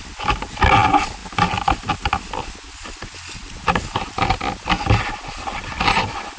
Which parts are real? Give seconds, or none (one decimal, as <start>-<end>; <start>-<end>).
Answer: 0.0-6.4